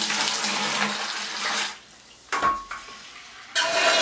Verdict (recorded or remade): recorded